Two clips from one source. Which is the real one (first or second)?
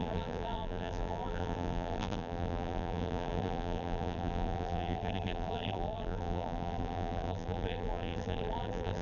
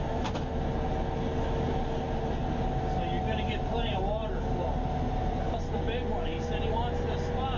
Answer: second